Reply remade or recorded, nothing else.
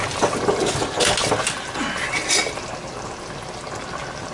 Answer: recorded